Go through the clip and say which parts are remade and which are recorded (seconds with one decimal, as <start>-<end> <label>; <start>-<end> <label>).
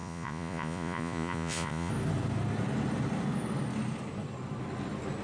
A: 0.0-1.9 remade; 1.9-5.2 recorded